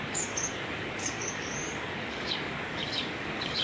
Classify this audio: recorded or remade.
remade